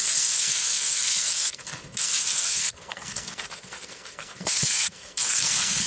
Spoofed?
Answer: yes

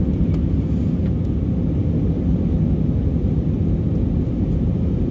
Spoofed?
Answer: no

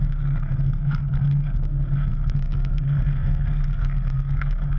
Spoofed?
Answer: yes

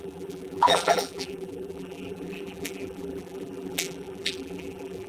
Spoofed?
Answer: yes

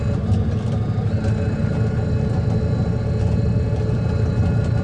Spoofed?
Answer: no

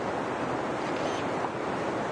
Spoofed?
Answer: no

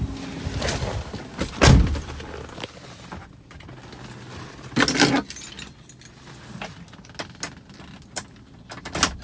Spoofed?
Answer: no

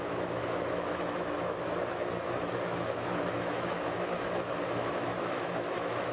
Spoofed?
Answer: yes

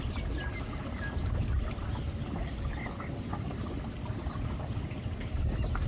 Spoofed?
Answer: no